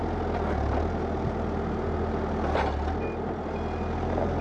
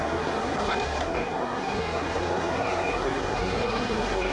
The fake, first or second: second